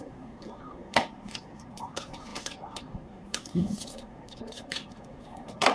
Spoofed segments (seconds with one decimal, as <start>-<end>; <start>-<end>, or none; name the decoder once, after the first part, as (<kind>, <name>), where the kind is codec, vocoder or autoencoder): 0.0-5.7 (codec, SNAC)